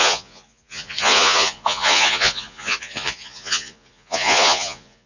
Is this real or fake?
fake